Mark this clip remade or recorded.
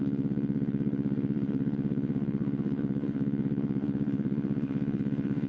remade